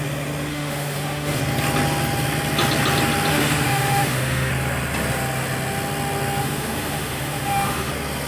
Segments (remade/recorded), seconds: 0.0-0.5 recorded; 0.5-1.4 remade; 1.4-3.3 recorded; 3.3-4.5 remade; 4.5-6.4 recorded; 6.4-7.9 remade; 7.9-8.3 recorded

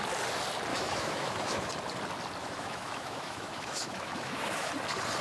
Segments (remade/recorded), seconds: 0.0-0.7 recorded; 0.7-1.7 remade; 1.7-2.4 recorded; 2.4-4.7 remade; 4.7-5.2 recorded